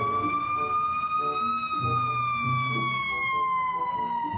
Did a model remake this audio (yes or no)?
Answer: no